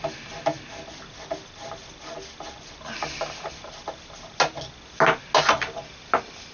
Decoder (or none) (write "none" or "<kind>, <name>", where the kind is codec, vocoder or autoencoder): none